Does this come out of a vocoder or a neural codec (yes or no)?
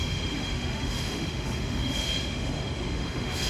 yes